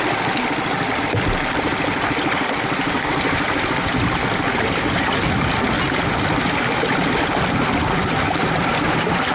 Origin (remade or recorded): recorded